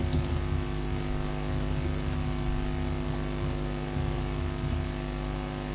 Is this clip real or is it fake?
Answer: real